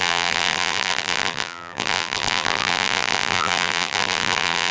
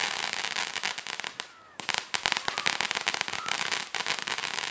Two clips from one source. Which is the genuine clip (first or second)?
second